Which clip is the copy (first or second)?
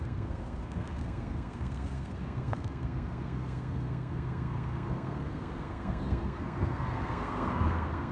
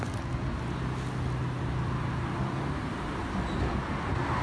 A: first